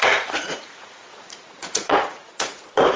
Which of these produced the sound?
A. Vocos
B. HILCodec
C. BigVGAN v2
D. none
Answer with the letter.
A